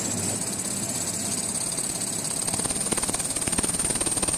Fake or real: real